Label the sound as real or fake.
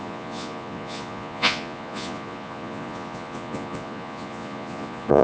fake